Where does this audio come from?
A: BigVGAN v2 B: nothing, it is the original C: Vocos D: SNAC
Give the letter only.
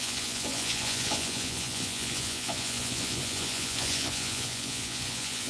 C